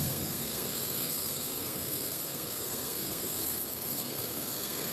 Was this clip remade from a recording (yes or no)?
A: yes